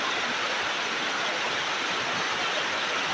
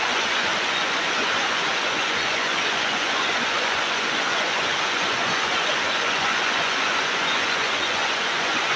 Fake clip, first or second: second